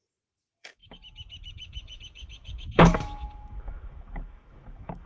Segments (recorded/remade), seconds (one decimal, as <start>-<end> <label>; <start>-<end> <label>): 0.0-5.1 remade